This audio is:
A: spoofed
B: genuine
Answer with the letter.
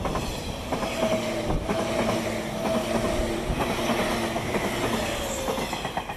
B